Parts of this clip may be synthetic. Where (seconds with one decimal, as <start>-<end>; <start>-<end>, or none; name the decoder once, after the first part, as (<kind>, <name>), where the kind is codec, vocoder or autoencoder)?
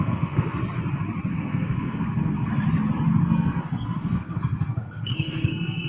0.0-0.6 (codec, SNAC); 1.3-2.5; 3.2-5.9